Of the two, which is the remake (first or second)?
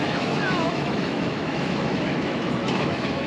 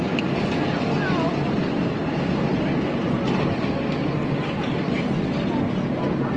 first